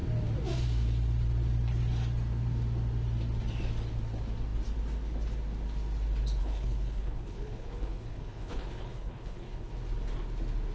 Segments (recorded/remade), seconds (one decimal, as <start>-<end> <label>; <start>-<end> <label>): 0.0-6.4 recorded; 6.4-9.7 remade; 9.7-10.7 recorded